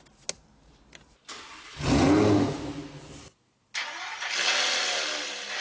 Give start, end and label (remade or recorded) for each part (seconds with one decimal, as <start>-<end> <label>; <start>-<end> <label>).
0.0-5.6 recorded